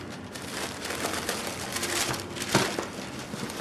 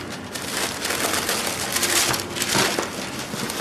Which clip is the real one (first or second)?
second